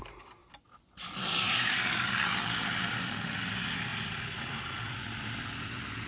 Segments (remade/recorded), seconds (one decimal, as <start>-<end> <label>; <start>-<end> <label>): 0.0-0.4 recorded; 0.4-3.2 remade; 3.2-3.9 recorded; 3.9-5.5 remade; 5.5-6.1 recorded